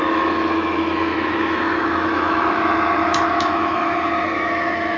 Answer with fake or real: fake